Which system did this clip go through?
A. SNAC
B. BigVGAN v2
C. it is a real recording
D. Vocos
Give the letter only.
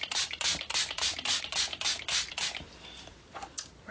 C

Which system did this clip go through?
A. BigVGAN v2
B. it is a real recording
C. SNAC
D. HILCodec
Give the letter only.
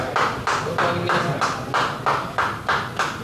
B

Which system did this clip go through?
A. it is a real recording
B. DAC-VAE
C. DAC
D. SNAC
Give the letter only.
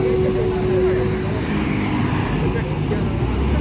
A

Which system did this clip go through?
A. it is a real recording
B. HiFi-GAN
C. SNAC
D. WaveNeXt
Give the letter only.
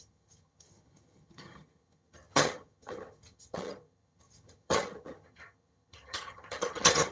B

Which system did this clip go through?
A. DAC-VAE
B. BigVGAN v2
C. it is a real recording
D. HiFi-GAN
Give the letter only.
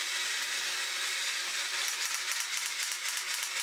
C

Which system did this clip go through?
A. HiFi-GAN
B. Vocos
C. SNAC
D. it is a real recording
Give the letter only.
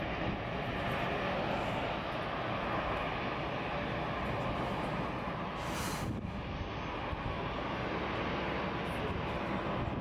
D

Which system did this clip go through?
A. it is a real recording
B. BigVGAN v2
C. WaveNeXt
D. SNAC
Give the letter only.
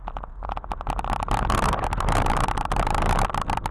A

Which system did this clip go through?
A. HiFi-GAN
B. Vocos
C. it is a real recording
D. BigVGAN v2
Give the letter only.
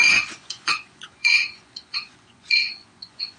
B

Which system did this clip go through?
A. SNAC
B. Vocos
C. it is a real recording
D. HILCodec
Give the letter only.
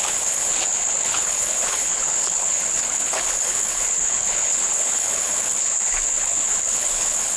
D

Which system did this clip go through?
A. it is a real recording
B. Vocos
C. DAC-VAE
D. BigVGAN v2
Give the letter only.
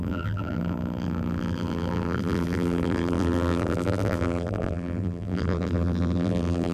D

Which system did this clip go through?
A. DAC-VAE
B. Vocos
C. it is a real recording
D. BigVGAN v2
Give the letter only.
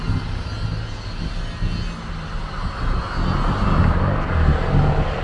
C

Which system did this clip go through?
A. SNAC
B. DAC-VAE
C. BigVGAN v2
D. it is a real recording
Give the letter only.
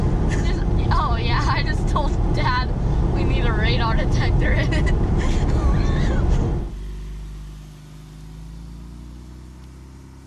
D